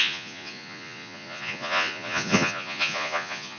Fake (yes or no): yes